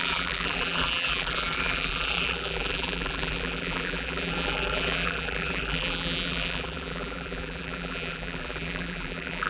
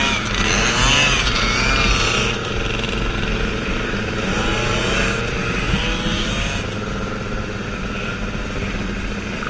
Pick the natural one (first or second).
second